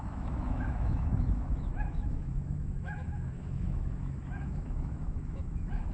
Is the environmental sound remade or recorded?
remade